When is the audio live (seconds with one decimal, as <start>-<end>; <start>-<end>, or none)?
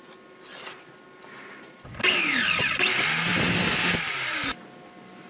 0.0-5.3